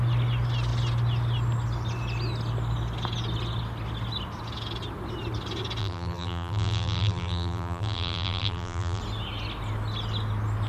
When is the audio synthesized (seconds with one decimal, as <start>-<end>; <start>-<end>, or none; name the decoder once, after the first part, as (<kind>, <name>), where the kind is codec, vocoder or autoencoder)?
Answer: 5.8-9.0 (vocoder, BigVGAN v2)